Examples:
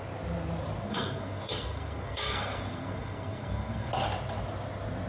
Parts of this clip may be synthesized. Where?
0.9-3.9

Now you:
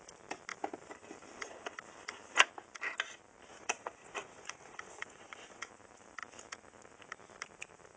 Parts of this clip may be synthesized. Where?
3.5-5.7